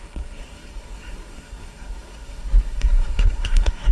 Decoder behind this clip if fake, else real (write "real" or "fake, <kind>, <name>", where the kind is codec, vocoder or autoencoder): fake, codec, SNAC